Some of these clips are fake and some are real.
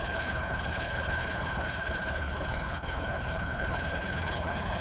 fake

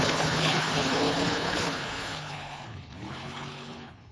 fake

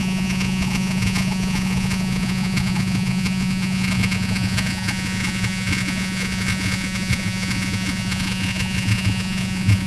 fake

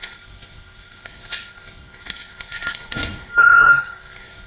fake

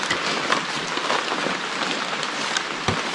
real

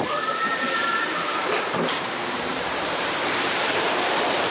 fake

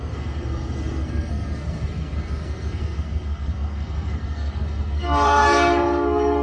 fake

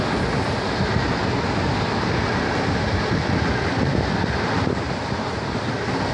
real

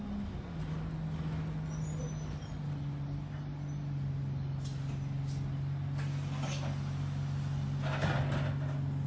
real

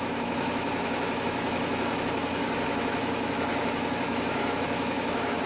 fake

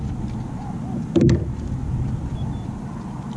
real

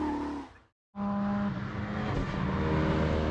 real